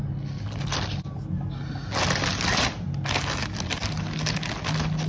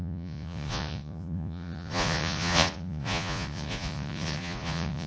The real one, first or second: first